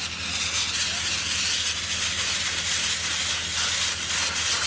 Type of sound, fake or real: real